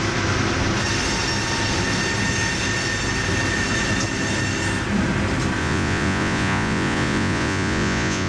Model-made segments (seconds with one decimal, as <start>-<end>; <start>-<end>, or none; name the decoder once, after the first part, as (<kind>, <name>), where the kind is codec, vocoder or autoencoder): 5.6-8.3 (vocoder, Vocos)